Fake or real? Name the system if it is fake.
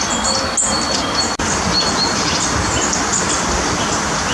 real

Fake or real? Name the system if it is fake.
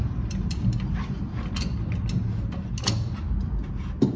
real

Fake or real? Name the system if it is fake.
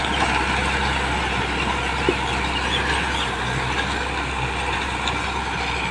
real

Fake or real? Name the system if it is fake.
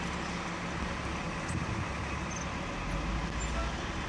real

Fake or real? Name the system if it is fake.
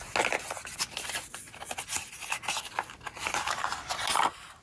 real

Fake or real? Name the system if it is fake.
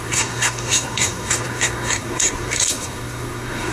fake, codec, SNAC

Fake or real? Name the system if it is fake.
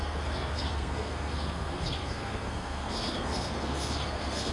fake, codec, SNAC